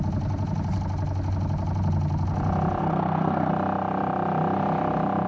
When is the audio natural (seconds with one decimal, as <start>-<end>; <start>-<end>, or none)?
0.0-2.8; 3.5-5.3